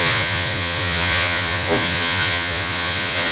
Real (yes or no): no